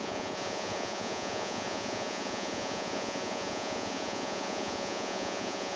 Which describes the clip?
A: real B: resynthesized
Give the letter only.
B